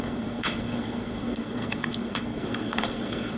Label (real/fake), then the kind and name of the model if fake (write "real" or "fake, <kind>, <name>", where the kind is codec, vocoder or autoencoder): fake, codec, SNAC